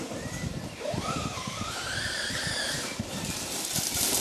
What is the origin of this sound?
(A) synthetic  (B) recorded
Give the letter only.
A